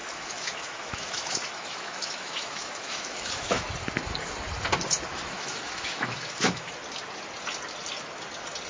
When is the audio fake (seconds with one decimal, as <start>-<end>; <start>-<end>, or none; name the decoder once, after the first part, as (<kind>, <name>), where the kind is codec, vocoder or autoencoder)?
0.0-3.7 (autoencoder, DAC-VAE); 5.1-6.7